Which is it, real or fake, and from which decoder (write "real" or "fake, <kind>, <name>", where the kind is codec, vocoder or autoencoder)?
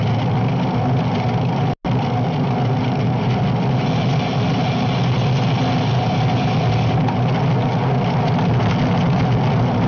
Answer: real